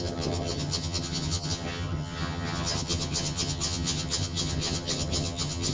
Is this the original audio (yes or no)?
no